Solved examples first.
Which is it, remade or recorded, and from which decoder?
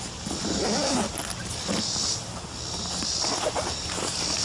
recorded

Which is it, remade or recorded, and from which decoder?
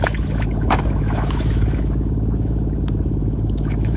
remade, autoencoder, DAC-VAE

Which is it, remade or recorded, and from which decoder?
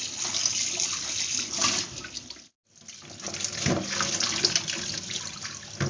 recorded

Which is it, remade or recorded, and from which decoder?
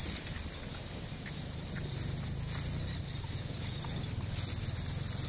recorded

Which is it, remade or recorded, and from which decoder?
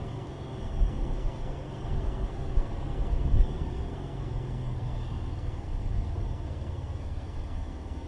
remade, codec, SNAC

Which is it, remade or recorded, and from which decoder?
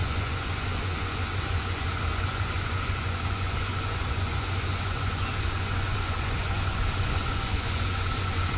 remade, vocoder, Vocos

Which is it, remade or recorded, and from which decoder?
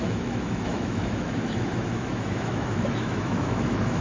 remade, autoencoder, DAC-VAE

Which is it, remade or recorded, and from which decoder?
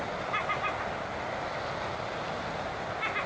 recorded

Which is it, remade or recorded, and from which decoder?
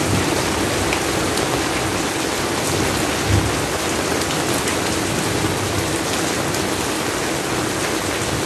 recorded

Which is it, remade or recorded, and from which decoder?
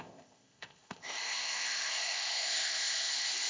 remade, codec, ZipCodec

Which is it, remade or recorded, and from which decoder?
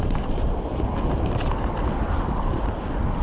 recorded